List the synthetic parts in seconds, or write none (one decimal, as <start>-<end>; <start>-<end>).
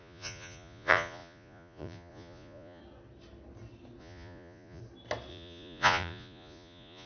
0.0-2.8; 4.0-4.8; 5.3-7.1